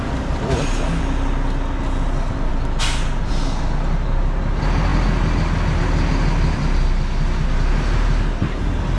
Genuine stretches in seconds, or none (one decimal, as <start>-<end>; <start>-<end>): 0.0-9.0